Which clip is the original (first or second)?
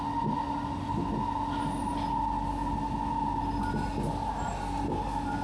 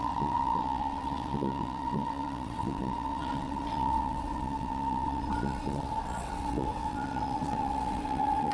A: first